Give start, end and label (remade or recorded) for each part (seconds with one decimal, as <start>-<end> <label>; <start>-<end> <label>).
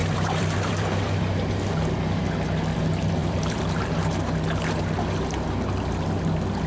0.0-1.5 remade; 1.5-3.2 recorded; 3.2-3.9 remade; 3.9-6.7 recorded